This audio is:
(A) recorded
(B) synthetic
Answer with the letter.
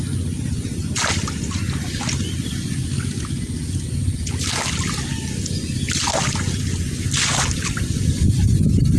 A